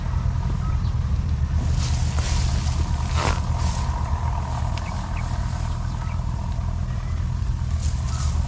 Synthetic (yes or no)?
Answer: no